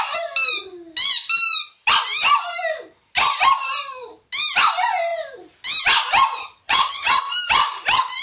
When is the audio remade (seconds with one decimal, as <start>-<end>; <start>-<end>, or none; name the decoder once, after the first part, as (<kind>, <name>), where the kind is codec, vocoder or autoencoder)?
6.4-7.2 (vocoder, HiFi-GAN)